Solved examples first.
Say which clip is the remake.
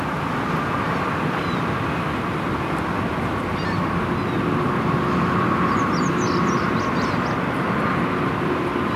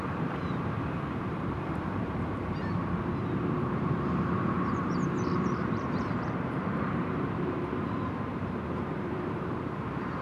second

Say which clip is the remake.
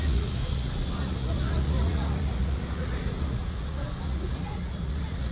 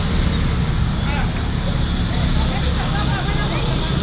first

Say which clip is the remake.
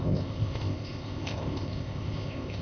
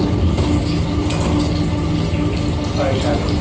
first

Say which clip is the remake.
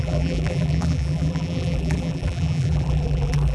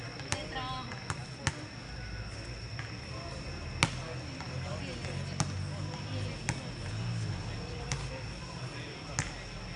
first